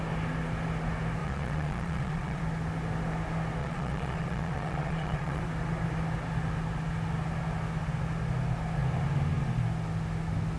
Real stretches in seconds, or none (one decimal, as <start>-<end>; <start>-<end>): 0.0-1.2; 2.4-3.6; 5.4-10.6